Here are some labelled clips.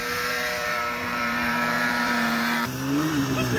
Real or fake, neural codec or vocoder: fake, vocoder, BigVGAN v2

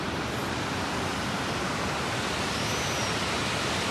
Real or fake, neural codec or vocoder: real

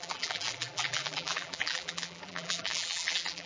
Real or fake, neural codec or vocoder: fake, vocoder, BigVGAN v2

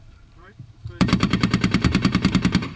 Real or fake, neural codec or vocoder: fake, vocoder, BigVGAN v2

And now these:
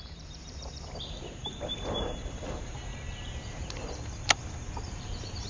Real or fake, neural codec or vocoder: fake, vocoder, BigVGAN v2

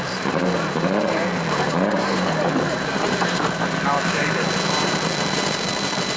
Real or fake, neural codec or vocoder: fake, vocoder, BigVGAN v2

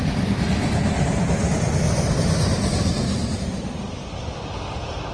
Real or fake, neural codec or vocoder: real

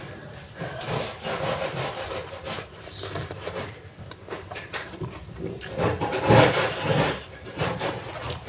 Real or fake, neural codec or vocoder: fake, vocoder, BigVGAN v2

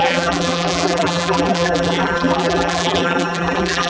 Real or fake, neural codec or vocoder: fake, vocoder, BigVGAN v2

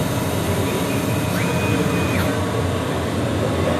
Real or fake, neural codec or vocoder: real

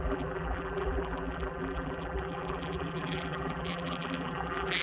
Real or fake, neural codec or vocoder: fake, vocoder, BigVGAN v2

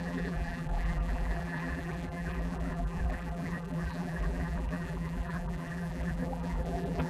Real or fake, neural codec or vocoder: fake, vocoder, BigVGAN v2